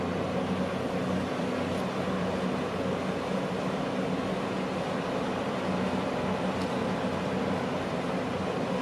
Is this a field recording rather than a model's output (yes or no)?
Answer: yes